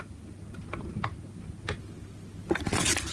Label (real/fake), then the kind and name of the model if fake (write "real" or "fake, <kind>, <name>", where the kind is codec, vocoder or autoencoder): real